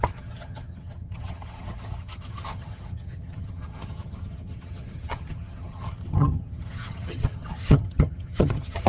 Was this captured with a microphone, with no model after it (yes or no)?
no